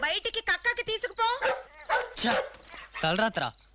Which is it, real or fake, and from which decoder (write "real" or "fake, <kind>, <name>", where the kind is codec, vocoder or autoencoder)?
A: real